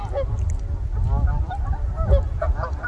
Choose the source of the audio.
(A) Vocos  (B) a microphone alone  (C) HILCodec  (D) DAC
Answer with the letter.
B